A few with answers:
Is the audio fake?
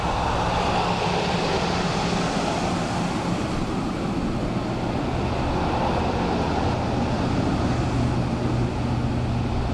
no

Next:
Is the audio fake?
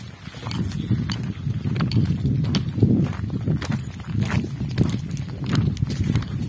no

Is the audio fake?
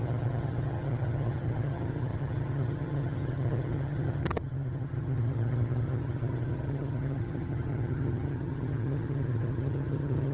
yes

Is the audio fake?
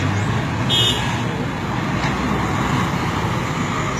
no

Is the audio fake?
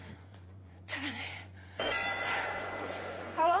yes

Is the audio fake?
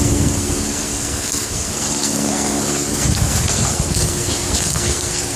yes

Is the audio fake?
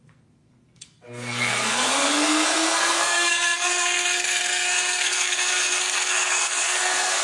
yes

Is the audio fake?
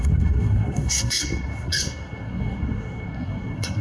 yes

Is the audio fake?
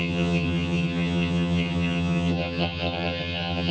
yes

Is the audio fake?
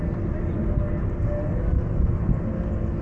no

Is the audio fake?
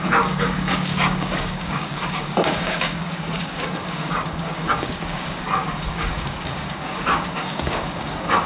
yes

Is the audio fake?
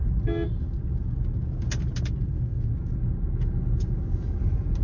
no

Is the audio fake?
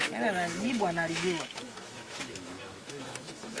yes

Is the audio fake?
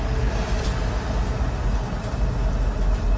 no